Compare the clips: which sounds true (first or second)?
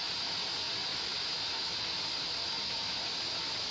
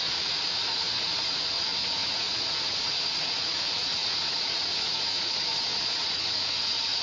first